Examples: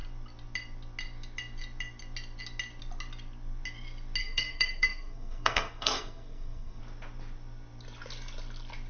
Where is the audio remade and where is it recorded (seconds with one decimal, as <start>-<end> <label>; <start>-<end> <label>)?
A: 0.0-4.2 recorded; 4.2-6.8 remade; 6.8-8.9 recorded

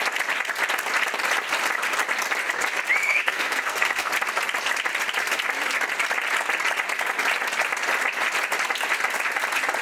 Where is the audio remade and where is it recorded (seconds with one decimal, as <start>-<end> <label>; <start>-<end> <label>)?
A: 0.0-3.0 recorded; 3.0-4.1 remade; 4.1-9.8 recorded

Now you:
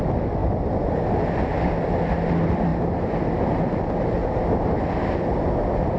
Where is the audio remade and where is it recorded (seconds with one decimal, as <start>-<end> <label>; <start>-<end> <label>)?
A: 0.0-6.0 recorded

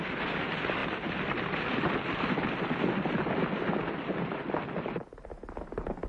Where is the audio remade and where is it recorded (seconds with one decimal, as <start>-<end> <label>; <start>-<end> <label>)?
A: 0.0-6.1 recorded

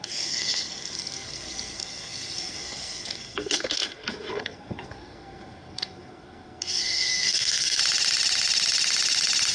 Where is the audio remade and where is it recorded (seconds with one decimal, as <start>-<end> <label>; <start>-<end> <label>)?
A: 0.0-7.8 remade; 7.8-9.5 recorded

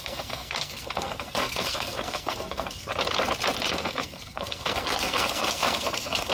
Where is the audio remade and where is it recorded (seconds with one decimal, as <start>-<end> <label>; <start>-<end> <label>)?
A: 0.0-2.9 remade; 2.9-3.7 recorded; 3.7-6.3 remade

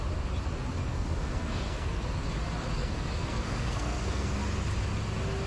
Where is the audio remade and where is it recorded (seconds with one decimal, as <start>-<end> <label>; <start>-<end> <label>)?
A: 0.0-0.8 recorded; 0.8-2.0 remade; 2.0-2.8 recorded; 2.8-4.3 remade; 4.3-5.5 recorded